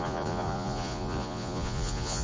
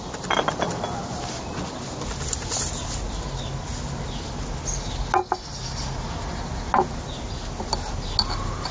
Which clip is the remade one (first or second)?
first